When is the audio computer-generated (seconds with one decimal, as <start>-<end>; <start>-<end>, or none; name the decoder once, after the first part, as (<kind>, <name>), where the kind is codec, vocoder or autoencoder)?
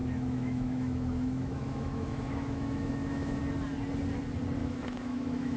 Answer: 0.0-3.4 (autoencoder, DAC-VAE); 4.6-5.6